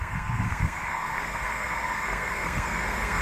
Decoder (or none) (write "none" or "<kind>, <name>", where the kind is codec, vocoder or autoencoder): codec, SNAC